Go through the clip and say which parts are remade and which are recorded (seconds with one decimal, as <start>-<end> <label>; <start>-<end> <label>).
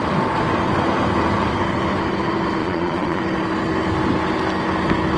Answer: 0.0-2.6 recorded; 2.6-3.2 remade; 3.2-5.2 recorded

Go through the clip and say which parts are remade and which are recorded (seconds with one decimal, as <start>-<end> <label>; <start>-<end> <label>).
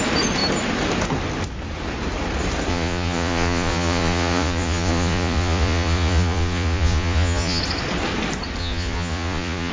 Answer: 0.0-2.7 recorded; 2.7-7.6 remade; 7.6-8.6 recorded; 8.6-9.7 remade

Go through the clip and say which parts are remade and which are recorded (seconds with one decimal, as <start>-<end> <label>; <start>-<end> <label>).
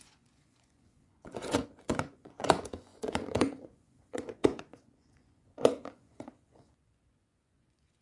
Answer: 0.0-8.0 remade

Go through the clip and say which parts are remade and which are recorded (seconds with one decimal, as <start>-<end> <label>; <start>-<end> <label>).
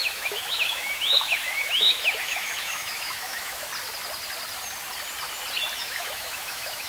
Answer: 0.0-3.7 remade; 3.7-5.8 recorded; 5.8-6.9 remade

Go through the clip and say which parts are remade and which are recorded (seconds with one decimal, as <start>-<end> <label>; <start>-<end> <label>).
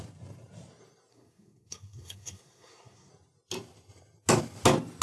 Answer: 0.0-1.1 recorded; 1.1-3.1 remade; 3.1-5.0 recorded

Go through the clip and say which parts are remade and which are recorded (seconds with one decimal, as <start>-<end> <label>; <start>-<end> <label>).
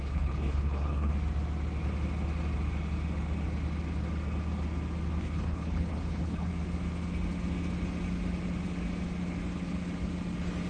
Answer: 0.0-1.1 remade; 1.1-5.2 recorded; 5.2-6.5 remade; 6.5-10.7 recorded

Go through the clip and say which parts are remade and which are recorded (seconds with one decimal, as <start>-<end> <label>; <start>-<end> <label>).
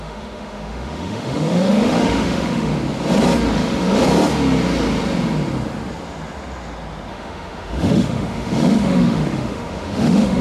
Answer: 0.0-2.7 remade; 2.7-3.5 recorded; 3.5-4.1 remade; 4.1-7.1 recorded; 7.1-10.4 remade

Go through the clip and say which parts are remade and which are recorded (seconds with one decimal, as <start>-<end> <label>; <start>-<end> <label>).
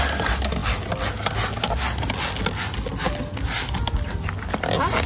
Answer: 0.0-5.1 recorded